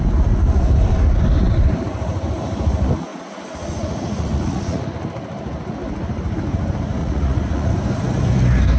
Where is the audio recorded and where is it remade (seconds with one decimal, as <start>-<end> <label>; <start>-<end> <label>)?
0.0-3.1 recorded; 3.1-4.8 remade; 4.8-7.0 recorded; 7.0-7.7 remade; 7.7-8.8 recorded